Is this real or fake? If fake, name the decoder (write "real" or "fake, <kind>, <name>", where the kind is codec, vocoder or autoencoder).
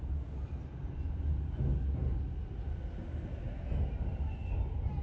real